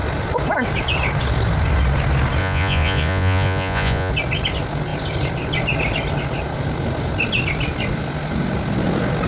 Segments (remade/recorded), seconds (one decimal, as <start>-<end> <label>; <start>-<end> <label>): 0.0-2.4 recorded; 2.4-4.1 remade; 4.1-9.3 recorded